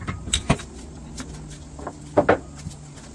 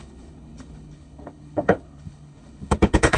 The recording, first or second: first